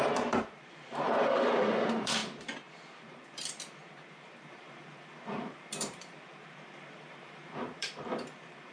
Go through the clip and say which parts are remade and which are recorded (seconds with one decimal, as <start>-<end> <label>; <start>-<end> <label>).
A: 0.0-8.7 remade